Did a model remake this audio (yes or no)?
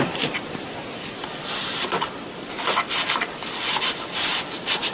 yes